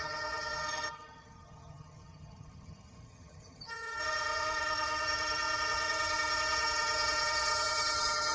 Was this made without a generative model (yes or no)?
no